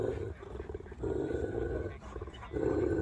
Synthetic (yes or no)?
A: no